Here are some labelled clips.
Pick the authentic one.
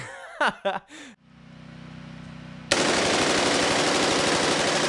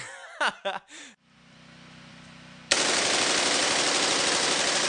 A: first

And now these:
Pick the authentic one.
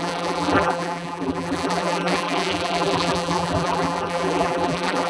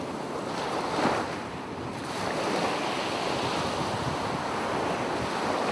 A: second